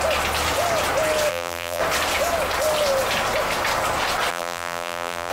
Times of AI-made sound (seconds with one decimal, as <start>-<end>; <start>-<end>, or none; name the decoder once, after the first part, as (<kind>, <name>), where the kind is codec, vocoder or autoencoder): 1.3-1.8 (vocoder, BigVGAN v2); 4.3-5.3

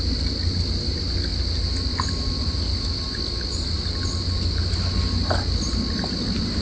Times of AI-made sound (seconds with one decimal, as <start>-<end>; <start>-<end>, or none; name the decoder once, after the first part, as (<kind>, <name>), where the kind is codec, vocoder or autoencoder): none

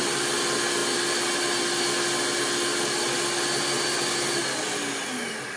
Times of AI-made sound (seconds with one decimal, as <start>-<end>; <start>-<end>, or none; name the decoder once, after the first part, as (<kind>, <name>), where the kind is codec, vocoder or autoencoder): none